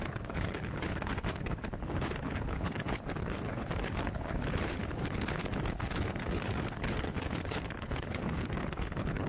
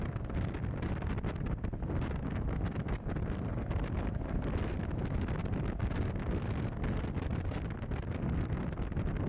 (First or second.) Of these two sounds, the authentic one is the second